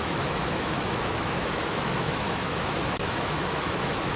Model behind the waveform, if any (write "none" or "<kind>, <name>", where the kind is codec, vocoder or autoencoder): autoencoder, DAC-VAE